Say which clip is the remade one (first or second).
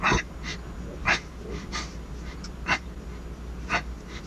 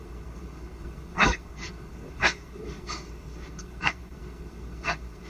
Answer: second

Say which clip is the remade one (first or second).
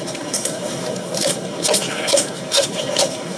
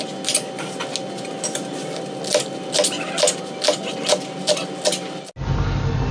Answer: first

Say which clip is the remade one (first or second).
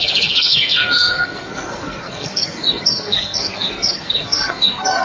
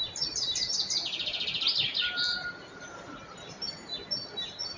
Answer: first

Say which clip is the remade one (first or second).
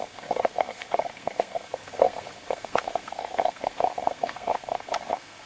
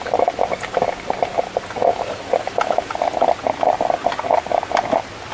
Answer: first